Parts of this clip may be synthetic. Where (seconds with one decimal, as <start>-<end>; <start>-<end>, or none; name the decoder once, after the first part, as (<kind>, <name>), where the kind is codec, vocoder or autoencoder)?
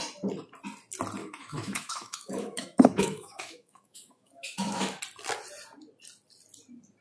1.2-5.0 (autoencoder, DAC-VAE)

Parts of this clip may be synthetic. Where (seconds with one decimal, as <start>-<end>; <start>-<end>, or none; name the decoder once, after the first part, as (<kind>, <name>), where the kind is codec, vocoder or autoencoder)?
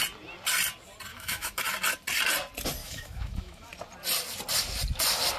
1.1-1.6 (autoencoder, DAC-VAE); 2.8-3.7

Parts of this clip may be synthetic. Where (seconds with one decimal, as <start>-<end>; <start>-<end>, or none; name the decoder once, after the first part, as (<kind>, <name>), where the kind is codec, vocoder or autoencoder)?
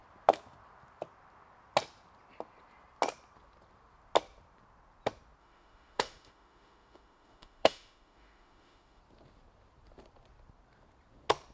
5.4-9.0 (autoencoder, DAC-VAE)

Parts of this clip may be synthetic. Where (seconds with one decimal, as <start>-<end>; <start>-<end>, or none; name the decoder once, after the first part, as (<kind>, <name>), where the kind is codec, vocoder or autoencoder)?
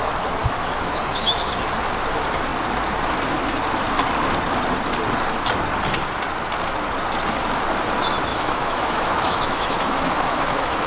0.4-1.5 (autoencoder, DAC-VAE); 8.3-10.9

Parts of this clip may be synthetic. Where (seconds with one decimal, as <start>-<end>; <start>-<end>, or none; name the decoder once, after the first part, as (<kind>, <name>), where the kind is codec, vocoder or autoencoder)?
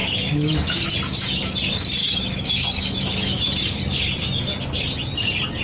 0.0-0.9 (autoencoder, DAC-VAE); 2.0-3.4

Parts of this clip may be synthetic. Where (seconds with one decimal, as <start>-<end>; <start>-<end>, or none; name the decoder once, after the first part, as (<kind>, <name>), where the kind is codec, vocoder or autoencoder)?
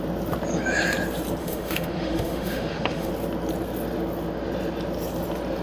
1.4-3.1 (autoencoder, DAC-VAE)